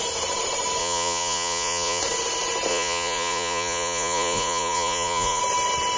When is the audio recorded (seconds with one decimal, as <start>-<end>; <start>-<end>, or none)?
0.0-0.8; 2.0-2.7; 5.4-6.0